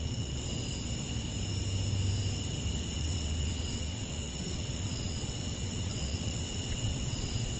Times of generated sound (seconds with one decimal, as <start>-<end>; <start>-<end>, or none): 0.0-0.5; 2.8-7.6